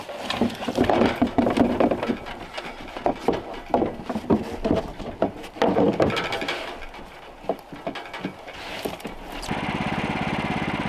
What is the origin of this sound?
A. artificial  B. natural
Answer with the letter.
B